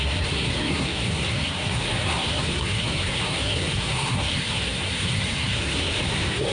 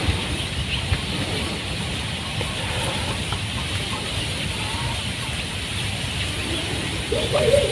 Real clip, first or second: second